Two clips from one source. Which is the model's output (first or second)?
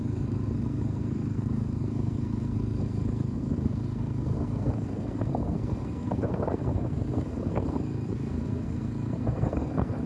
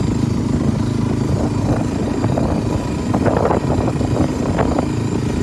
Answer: first